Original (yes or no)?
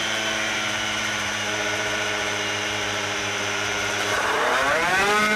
no